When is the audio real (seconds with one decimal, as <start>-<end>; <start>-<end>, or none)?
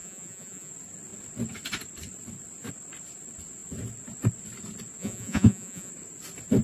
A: 0.7-5.0; 5.9-6.6